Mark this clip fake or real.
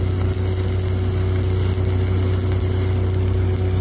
real